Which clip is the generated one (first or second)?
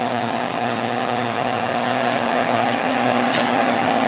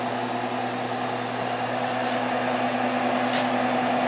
first